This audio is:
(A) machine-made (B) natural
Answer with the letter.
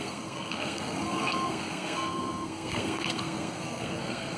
A